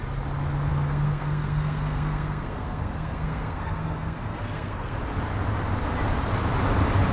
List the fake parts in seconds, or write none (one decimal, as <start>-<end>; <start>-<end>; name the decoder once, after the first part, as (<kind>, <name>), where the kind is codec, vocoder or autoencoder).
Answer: 0.7-5.0 (codec, SNAC)